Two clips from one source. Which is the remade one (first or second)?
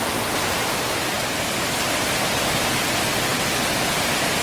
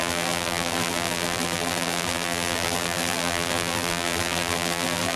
second